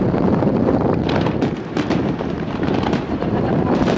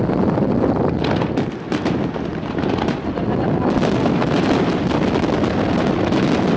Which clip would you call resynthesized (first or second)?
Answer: first